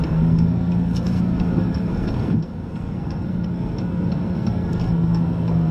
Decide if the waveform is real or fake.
fake